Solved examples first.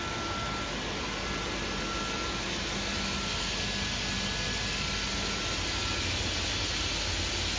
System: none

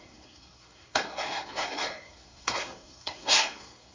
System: codec, SNAC